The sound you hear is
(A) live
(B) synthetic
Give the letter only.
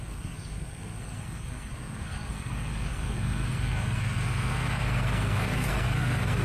B